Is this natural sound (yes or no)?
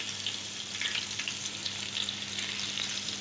yes